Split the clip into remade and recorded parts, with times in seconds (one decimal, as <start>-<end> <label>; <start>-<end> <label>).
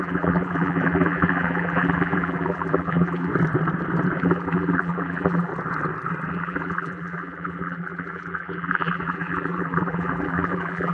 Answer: 0.0-3.3 remade; 3.3-4.2 recorded; 4.2-5.5 remade; 5.5-6.3 recorded; 6.3-10.9 remade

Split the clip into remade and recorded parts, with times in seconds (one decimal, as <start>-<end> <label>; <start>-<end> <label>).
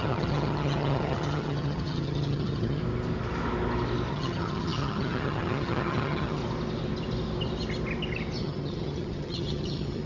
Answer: 0.0-2.8 remade; 2.8-4.1 recorded; 4.1-6.4 remade; 6.4-8.4 recorded; 8.4-10.1 remade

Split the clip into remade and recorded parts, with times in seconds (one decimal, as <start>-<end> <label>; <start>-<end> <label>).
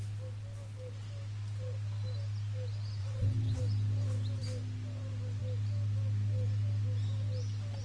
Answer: 0.0-3.0 recorded; 3.0-3.6 remade; 3.6-7.8 recorded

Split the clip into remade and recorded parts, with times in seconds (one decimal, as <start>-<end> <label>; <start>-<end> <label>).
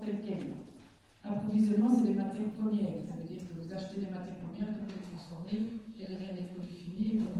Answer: 0.0-4.8 recorded; 4.8-7.4 remade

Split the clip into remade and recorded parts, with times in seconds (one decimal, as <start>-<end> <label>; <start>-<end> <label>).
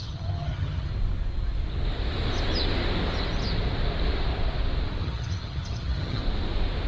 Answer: 0.0-0.9 remade; 0.9-5.0 recorded; 5.0-6.2 remade; 6.2-6.9 recorded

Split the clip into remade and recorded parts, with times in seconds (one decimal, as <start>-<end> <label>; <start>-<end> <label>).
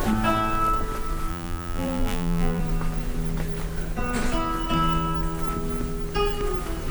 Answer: 0.0-1.3 recorded; 1.3-2.6 remade; 2.6-6.9 recorded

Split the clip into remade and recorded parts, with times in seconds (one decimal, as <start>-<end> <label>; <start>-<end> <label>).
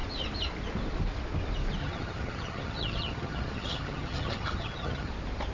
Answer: 0.0-1.8 recorded; 1.8-5.1 remade; 5.1-5.5 recorded